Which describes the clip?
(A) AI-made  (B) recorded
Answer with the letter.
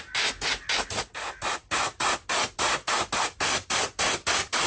B